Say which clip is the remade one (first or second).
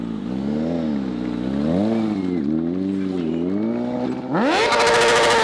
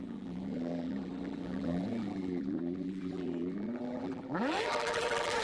second